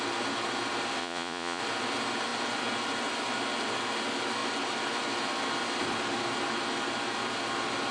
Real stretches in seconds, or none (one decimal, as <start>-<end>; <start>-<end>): 0.0-1.0; 1.6-7.9